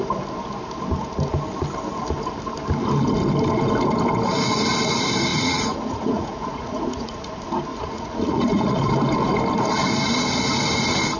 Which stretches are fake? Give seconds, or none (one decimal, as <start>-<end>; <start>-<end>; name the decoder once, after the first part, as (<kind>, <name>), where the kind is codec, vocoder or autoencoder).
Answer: 5.3-7.3 (vocoder, Vocos); 7.7-8.9